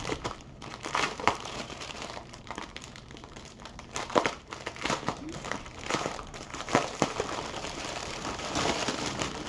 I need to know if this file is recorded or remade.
remade